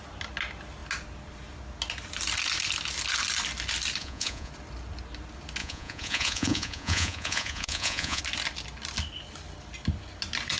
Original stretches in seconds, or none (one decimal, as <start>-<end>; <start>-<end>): 0.0-4.0; 4.5-5.6; 8.2-10.6